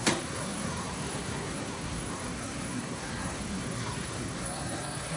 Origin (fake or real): fake